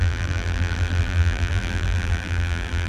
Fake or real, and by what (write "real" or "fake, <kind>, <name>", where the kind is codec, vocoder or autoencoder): fake, vocoder, BigVGAN v2